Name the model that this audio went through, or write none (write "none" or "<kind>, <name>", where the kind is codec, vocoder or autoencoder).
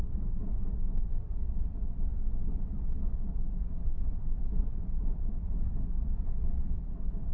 none